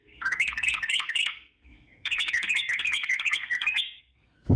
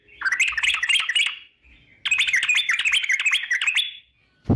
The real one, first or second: second